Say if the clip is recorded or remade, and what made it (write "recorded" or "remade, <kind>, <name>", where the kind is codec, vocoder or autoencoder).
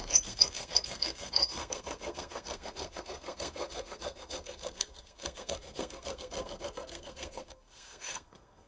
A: remade, codec, SNAC